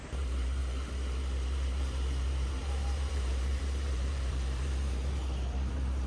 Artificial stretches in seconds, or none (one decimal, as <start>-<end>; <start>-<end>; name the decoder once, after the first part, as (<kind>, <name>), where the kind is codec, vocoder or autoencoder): 0.0-6.1 (vocoder, BigVGAN v2)